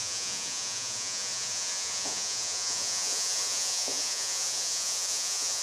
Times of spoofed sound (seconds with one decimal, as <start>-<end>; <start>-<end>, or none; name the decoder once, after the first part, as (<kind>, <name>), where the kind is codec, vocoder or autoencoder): 0.0-5.6 (vocoder, Vocos)